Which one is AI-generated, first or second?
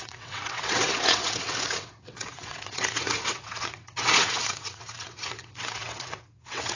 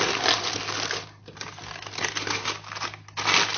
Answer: first